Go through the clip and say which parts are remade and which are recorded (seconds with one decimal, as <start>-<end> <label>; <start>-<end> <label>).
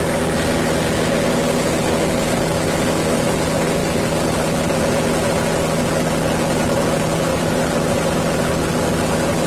0.0-7.3 recorded; 7.3-8.2 remade; 8.2-9.5 recorded